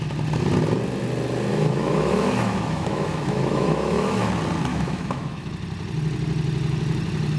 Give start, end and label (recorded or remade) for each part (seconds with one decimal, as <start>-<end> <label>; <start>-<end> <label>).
0.0-1.5 recorded; 1.5-4.3 remade; 4.3-4.7 recorded; 4.7-5.5 remade; 5.5-7.4 recorded